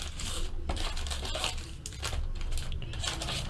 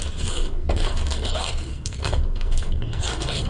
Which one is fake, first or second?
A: second